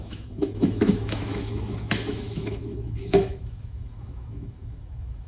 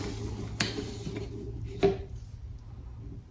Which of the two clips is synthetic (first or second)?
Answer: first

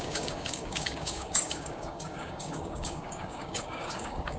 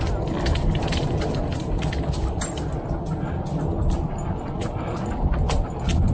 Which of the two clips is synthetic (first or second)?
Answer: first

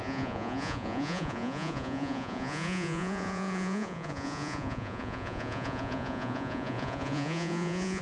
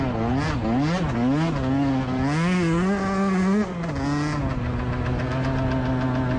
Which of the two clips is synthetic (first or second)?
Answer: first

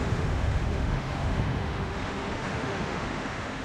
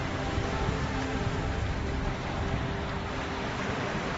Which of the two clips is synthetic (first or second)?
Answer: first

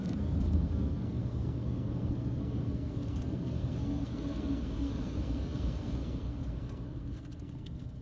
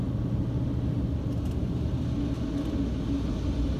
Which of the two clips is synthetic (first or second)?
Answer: first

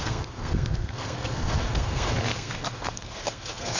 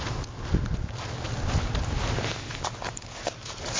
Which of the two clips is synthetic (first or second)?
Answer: first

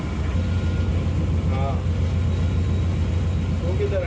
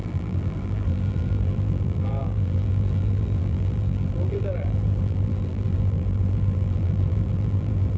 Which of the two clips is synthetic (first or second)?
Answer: second